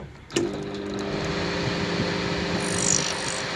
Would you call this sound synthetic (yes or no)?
no